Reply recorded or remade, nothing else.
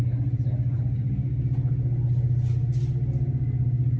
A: recorded